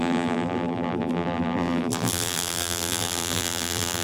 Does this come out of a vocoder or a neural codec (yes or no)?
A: yes